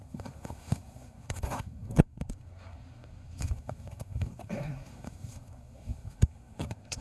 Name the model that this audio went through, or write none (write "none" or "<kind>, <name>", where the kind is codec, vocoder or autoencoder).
codec, SNAC